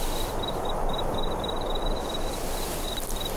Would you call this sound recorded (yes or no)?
yes